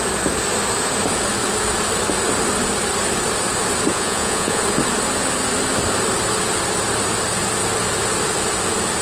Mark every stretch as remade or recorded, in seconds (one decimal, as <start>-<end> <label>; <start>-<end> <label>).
0.0-3.9 recorded; 3.9-4.6 remade; 4.6-9.0 recorded